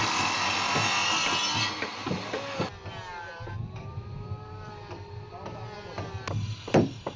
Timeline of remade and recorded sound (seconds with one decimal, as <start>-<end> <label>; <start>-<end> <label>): 0.0-7.2 recorded